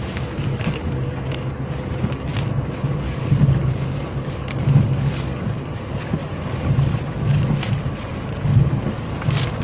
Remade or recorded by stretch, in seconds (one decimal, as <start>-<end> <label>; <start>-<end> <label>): 0.0-2.3 remade; 2.3-2.9 recorded; 2.9-9.6 remade